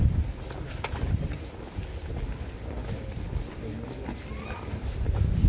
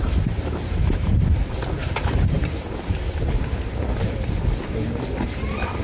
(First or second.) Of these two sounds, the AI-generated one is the second